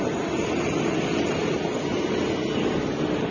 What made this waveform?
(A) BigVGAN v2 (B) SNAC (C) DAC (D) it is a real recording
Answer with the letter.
D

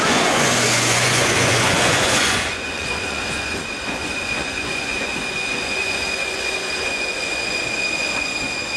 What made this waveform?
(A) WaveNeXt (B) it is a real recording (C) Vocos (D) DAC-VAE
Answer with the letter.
C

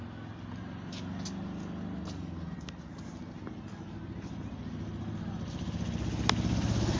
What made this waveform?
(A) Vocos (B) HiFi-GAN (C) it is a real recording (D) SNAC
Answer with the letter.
C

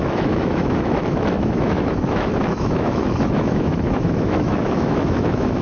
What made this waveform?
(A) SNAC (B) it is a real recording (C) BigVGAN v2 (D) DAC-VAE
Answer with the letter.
D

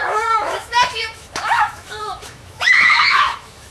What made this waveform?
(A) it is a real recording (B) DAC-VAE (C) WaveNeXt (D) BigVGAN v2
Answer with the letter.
B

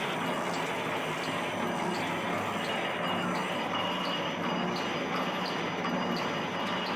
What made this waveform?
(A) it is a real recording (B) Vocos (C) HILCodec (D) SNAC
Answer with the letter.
A